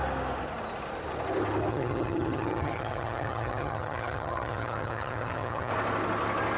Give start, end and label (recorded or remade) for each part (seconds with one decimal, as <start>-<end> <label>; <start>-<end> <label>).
0.0-1.7 recorded; 1.7-5.7 remade; 5.7-6.6 recorded